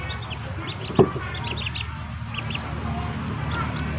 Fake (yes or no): no